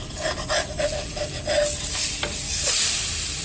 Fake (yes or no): no